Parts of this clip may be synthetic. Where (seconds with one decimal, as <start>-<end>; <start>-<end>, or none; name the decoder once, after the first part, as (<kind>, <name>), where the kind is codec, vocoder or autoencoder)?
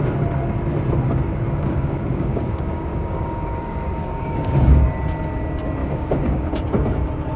1.3-4.9 (codec, DAC); 5.8-6.5